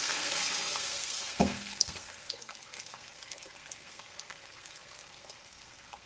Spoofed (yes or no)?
yes